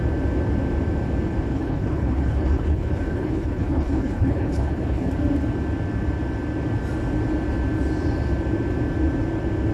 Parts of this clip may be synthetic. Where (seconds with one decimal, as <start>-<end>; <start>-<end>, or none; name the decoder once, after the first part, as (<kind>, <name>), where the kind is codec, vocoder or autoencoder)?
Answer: 1.5-5.1 (codec, HILCodec)

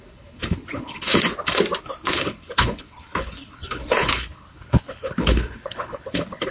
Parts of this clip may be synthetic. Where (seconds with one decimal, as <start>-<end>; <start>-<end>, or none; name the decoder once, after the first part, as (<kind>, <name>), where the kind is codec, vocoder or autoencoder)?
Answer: 0.0-1.3 (codec, HILCodec); 1.8-6.5

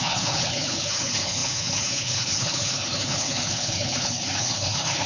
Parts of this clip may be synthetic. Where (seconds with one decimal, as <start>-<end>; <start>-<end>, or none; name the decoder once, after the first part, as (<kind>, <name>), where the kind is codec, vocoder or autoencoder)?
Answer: 0.0-5.1 (codec, HILCodec)

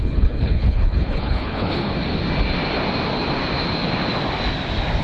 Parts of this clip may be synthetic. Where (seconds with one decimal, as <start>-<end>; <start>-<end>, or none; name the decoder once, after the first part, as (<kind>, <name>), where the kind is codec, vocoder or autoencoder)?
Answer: 0.0-1.9 (codec, HILCodec)

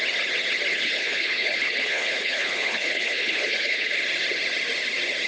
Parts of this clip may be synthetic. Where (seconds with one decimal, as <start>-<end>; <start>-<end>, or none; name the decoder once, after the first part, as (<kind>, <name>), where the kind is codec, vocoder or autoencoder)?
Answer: 0.7-3.9 (codec, HILCodec)

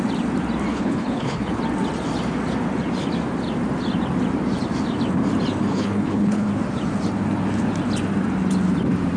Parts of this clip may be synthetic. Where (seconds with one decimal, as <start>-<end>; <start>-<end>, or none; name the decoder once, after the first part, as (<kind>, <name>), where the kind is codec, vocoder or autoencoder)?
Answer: 0.7-1.6 (codec, HILCodec); 5.7-6.5

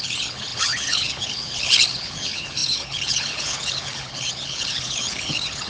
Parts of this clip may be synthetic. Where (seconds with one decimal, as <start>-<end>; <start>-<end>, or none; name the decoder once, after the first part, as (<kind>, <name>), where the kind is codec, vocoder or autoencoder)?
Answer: 0.0-5.7 (codec, HILCodec)